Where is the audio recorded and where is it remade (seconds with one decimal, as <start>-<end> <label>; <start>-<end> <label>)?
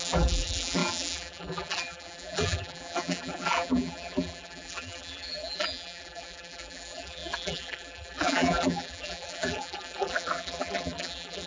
0.0-11.5 remade